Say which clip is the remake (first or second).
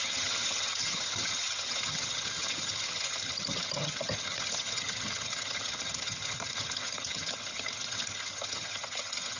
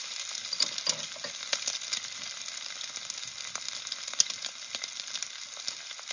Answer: first